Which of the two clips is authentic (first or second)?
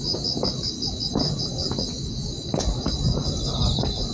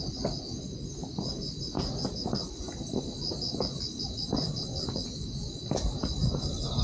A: first